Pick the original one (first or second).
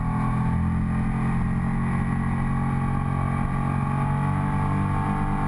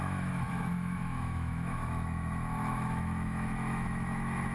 first